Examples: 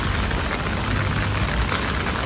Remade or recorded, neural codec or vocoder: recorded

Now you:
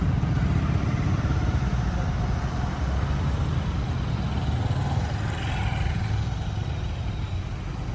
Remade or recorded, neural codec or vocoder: recorded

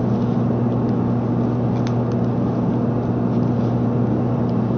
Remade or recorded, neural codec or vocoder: recorded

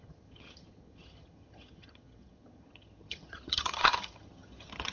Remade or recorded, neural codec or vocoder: remade, vocoder, HiFi-GAN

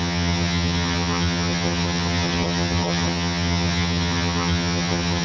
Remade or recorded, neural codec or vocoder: remade, vocoder, HiFi-GAN